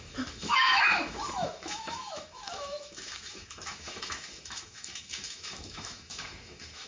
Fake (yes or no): yes